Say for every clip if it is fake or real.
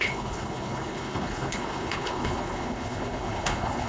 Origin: fake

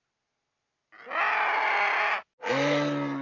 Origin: real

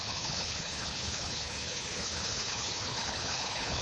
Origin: fake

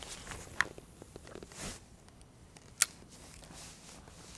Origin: real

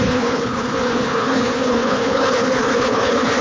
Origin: fake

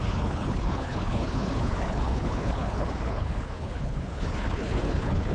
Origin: fake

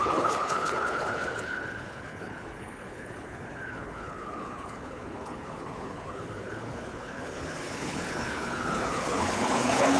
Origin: fake